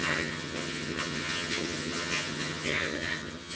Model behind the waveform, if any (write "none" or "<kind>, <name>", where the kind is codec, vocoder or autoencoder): vocoder, HiFi-GAN